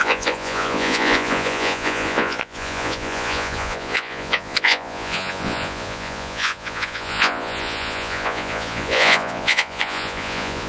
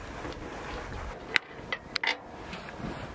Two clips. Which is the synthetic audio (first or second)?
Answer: first